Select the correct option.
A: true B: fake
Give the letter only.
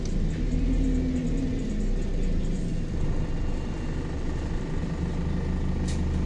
A